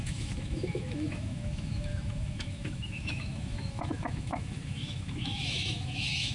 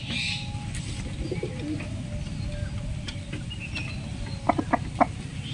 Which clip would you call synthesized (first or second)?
first